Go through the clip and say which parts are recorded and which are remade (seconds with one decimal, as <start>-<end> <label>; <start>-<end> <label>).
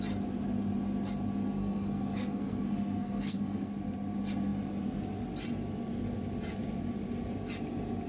0.0-1.6 recorded; 1.6-3.7 remade; 3.7-8.1 recorded